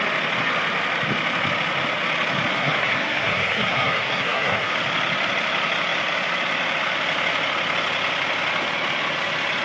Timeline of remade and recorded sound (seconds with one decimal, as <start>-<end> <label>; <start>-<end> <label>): 0.0-2.5 recorded; 2.5-4.7 remade; 4.7-9.6 recorded